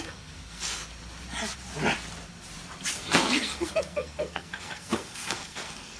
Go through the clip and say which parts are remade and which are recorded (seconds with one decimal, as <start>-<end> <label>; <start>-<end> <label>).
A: 0.0-0.8 remade; 0.8-2.9 recorded; 2.9-6.0 remade